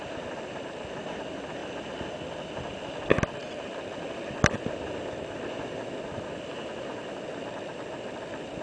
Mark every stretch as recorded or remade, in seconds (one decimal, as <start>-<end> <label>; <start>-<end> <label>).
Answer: 0.0-8.6 recorded